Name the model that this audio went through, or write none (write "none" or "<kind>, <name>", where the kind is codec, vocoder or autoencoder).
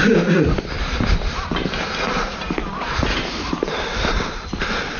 none